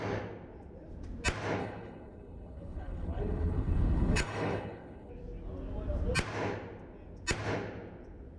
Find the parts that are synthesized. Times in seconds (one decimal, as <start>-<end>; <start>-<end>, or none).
1.6-5.1

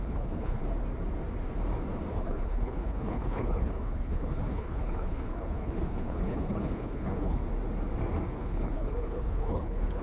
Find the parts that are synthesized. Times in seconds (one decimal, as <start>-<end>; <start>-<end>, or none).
0.0-0.6; 2.1-7.4; 8.3-10.0